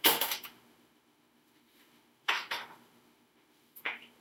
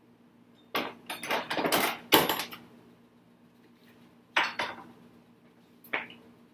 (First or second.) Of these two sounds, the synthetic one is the first